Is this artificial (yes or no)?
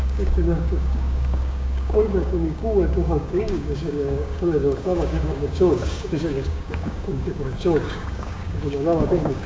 yes